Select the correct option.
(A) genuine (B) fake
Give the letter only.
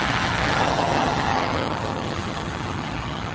B